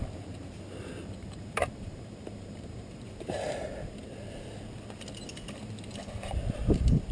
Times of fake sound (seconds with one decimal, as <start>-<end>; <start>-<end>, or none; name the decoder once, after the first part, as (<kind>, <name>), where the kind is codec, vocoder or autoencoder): 1.2-3.7 (vocoder, BigVGAN v2)